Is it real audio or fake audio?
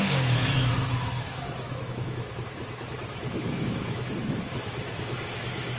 fake